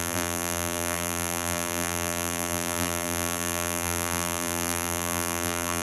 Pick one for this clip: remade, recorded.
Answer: remade